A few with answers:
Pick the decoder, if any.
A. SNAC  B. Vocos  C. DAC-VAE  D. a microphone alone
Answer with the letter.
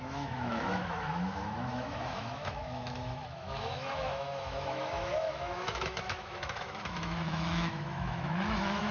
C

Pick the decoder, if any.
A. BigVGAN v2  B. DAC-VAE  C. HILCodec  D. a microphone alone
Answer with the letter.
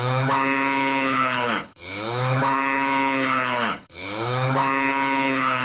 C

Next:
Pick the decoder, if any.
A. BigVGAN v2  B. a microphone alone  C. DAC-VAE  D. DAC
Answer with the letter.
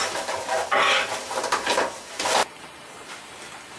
A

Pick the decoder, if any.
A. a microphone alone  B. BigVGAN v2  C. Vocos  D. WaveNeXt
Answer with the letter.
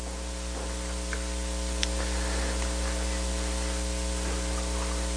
A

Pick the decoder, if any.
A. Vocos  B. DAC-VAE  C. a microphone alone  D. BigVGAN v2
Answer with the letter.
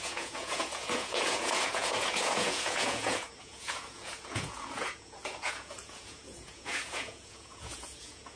A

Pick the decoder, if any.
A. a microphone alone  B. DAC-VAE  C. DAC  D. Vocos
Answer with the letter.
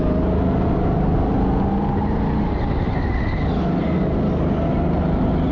A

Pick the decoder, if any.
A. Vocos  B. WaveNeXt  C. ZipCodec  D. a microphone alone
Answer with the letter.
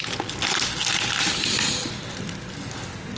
D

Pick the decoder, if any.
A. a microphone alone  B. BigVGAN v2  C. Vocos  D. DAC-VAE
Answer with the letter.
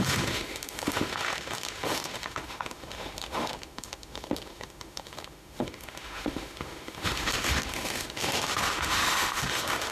D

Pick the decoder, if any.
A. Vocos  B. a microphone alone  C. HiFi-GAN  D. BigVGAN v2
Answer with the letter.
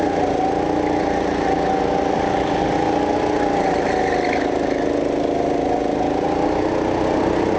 B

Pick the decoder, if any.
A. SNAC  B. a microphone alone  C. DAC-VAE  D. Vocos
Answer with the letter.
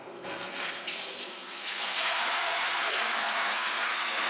A